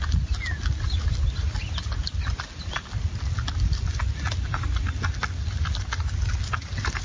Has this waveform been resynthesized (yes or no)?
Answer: no